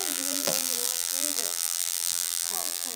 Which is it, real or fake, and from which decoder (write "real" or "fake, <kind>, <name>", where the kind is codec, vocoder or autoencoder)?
fake, vocoder, BigVGAN v2